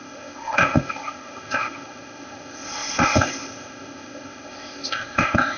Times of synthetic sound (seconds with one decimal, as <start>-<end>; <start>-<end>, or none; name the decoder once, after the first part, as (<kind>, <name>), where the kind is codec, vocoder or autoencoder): 0.0-5.6 (codec, ZipCodec)